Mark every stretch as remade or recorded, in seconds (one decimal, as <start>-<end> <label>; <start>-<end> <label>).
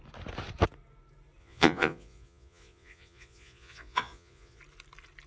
0.0-1.4 recorded; 1.4-4.6 remade; 4.6-5.3 recorded